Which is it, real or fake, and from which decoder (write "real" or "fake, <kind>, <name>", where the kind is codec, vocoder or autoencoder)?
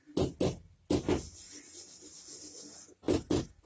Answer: real